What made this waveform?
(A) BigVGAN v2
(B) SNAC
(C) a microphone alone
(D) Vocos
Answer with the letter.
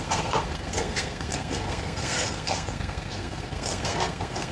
B